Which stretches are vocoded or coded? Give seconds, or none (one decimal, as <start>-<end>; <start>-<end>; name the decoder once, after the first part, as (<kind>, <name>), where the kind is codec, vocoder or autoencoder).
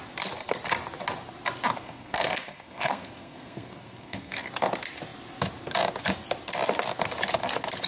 1.8-4.5 (codec, SNAC)